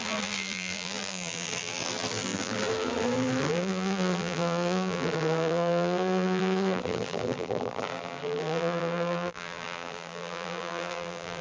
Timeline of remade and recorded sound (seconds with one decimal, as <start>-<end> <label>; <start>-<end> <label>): 0.0-11.4 remade